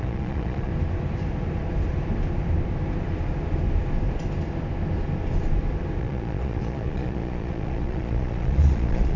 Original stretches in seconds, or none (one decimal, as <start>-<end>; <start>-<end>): 0.7-6.0